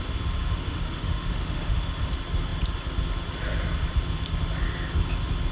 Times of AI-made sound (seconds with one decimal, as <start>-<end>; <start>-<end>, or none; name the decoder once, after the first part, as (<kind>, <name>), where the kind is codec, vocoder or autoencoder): 0.4-2.1 (autoencoder, DAC-VAE)